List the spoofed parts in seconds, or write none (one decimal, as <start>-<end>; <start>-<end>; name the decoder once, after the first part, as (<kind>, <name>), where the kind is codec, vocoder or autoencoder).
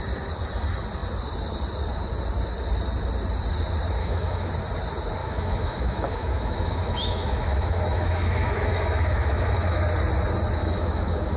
4.0-4.5 (autoencoder, DAC-VAE); 5.2-9.8; 10.6-11.4